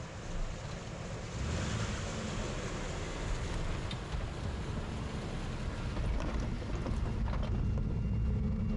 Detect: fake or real real